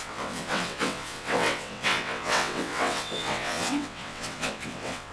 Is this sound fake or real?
fake